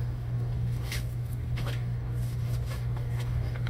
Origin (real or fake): fake